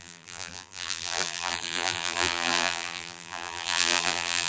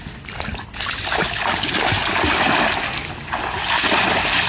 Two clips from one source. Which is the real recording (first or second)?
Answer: second